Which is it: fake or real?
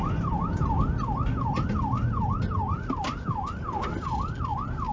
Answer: real